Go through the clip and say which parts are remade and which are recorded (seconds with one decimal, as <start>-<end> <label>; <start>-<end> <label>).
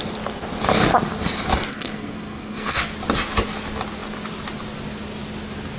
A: 0.0-1.7 recorded; 1.7-2.9 remade; 2.9-5.8 recorded